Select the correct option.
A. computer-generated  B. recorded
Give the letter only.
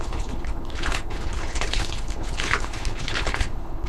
A